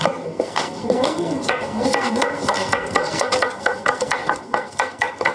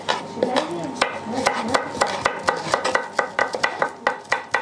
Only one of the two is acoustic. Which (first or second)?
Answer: second